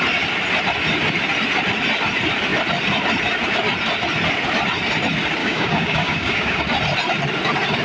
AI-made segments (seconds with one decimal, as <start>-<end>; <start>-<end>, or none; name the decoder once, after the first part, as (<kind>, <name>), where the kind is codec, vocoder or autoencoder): 5.4-6.6 (codec, DAC)